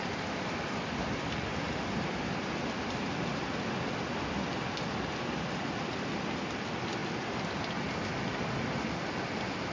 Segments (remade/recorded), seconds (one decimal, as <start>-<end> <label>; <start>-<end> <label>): 0.0-9.7 recorded